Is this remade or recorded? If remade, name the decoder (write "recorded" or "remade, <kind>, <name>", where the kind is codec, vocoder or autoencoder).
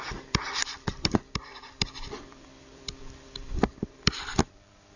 remade, vocoder, BigVGAN v2